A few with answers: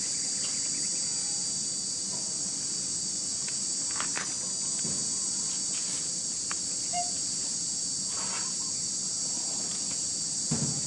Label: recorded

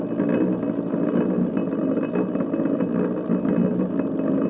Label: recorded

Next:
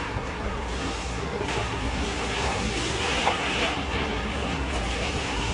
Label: remade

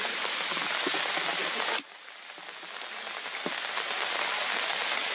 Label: recorded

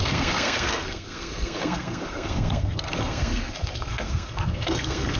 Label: remade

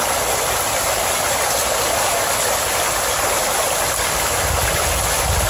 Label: recorded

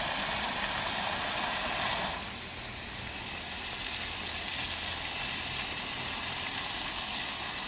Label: recorded